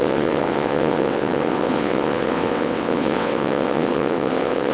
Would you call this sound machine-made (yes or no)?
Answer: yes